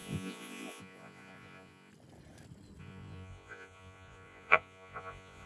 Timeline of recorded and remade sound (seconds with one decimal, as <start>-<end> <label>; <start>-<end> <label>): 0.0-1.9 remade; 1.9-2.8 recorded; 2.8-5.5 remade